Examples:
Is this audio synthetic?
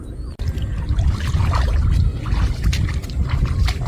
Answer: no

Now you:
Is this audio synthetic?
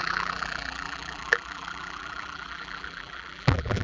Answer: yes